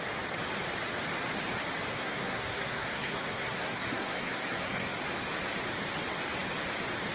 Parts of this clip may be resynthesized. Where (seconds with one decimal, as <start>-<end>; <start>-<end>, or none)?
1.9-4.9